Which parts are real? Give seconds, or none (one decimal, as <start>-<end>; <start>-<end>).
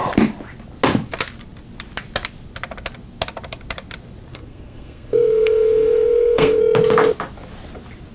0.0-4.3; 6.6-8.1